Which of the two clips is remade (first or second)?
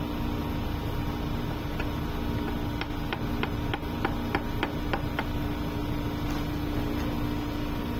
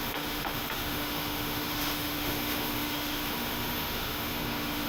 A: second